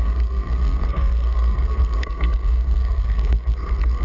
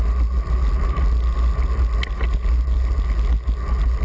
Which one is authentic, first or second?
second